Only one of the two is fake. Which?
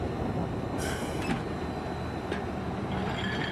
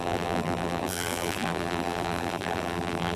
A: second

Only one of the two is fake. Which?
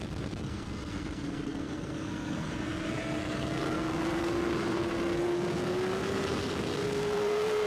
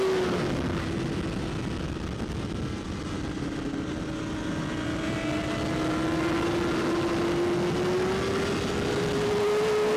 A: first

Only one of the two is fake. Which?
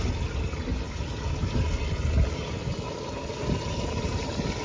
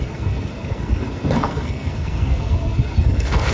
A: second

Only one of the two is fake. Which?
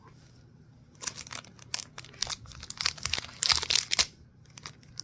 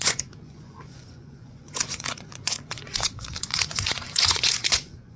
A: second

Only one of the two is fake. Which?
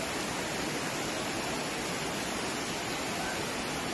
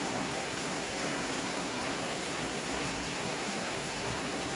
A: second